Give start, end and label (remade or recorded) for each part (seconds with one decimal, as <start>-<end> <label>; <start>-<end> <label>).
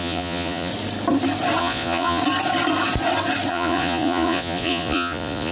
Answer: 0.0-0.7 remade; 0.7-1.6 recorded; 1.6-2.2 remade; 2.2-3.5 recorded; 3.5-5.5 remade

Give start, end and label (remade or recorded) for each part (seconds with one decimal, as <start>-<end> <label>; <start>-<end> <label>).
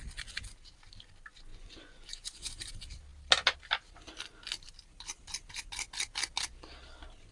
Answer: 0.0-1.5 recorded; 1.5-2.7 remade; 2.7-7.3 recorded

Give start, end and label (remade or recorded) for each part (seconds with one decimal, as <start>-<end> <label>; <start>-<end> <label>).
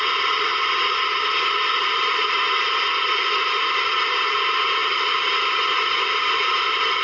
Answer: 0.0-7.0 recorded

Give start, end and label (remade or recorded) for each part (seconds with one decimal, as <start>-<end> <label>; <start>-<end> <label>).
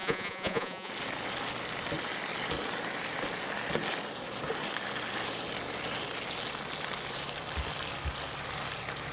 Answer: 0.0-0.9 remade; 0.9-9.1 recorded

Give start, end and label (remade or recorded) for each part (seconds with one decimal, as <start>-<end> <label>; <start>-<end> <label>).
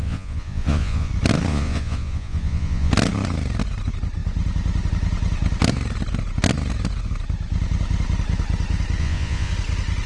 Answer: 0.0-1.1 remade; 1.1-1.5 recorded; 1.5-2.9 remade; 2.9-9.0 recorded; 9.0-9.5 remade; 9.5-10.1 recorded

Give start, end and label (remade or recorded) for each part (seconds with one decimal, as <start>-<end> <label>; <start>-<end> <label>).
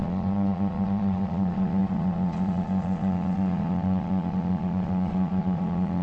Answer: 0.0-6.0 remade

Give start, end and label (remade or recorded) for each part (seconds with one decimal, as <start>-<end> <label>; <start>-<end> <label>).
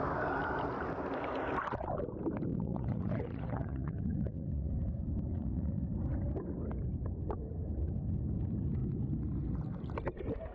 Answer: 0.0-2.5 recorded; 2.5-4.7 remade; 4.7-5.3 recorded; 5.3-5.8 remade; 5.8-10.5 recorded